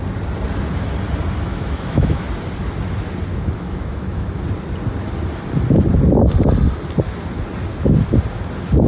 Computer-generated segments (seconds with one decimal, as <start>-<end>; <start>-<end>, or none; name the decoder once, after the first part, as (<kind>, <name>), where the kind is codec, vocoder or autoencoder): 1.5-2.3 (autoencoder, DAC-VAE); 3.3-4.4